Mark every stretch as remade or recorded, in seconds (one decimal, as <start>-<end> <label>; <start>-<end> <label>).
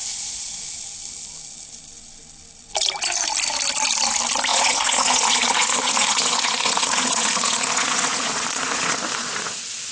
0.0-0.6 remade; 0.6-4.5 recorded; 4.5-9.9 remade